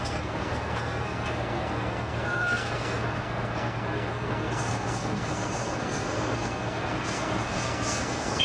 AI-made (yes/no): yes